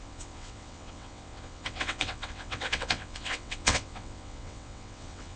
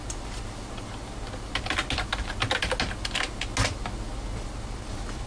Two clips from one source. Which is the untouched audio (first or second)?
second